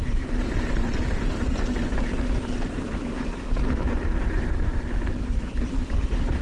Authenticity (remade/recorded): recorded